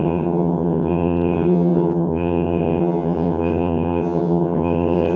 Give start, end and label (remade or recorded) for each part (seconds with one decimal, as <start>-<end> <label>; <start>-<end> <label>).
0.0-5.2 remade